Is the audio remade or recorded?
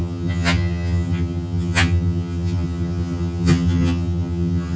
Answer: remade